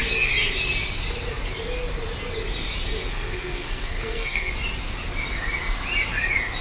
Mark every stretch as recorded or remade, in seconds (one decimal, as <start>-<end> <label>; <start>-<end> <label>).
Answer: 0.0-3.1 recorded; 3.1-4.5 remade; 4.5-6.6 recorded